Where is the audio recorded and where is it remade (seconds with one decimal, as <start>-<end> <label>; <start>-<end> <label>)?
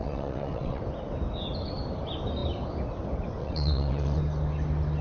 0.0-0.8 remade; 0.8-3.4 recorded; 3.4-4.2 remade; 4.2-5.0 recorded